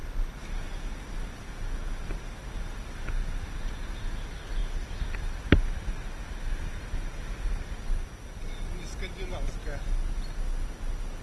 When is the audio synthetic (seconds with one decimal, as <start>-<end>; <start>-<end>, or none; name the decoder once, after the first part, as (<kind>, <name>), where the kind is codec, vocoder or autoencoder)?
none